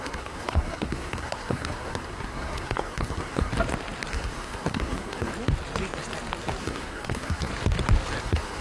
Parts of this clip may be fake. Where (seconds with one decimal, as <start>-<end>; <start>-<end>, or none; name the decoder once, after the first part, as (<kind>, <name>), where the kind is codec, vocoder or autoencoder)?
0.0-3.5 (codec, SNAC); 4.1-5.3; 6.6-7.5; 8.2-8.6